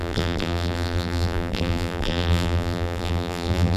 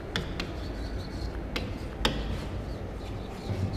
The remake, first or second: first